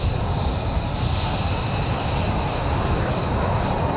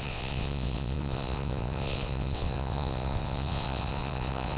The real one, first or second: first